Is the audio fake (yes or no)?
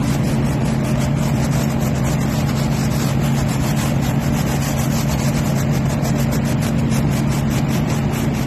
no